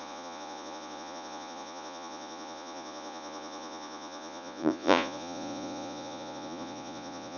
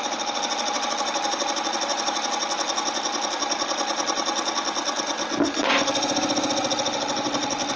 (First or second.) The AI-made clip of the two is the first